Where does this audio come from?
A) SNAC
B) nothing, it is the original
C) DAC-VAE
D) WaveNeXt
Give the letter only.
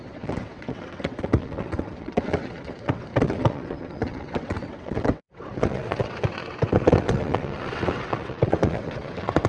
D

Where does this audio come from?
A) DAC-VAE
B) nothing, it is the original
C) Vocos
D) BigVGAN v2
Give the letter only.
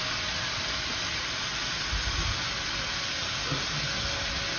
B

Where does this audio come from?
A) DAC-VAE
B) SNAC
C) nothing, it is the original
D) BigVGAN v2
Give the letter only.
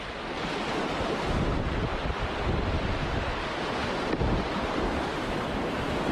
C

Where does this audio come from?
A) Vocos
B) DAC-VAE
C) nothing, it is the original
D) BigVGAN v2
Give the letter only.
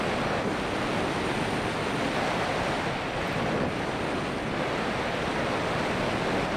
C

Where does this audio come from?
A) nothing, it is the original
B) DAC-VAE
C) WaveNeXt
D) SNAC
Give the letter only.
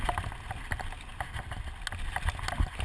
A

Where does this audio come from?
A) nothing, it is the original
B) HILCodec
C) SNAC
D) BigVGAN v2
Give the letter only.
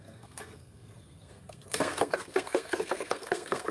C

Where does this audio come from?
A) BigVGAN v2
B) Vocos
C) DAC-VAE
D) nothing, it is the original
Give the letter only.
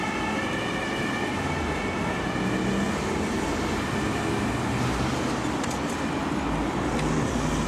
D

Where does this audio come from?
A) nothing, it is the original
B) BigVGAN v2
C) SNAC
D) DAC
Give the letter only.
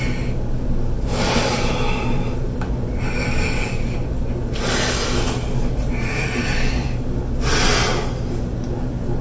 A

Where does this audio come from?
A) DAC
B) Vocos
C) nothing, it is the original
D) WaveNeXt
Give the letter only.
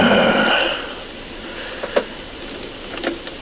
C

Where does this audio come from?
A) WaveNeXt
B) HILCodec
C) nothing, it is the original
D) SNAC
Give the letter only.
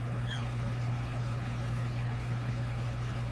B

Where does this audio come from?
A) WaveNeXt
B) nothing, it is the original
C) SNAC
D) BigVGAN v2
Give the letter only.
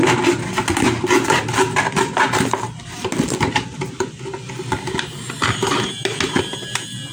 B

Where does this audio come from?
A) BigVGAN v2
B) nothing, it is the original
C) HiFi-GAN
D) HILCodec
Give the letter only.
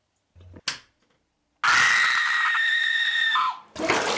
B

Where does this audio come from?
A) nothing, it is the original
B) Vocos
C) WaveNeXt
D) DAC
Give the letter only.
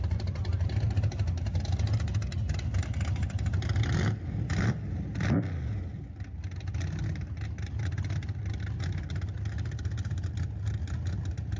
A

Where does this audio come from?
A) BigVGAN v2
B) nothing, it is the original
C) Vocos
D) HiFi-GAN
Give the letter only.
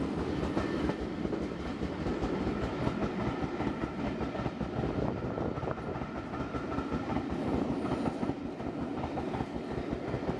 B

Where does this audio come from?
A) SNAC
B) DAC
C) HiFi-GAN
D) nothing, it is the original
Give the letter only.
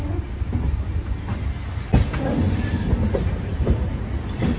D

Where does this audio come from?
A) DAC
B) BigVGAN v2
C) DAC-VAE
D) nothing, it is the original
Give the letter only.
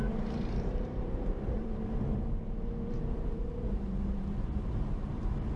B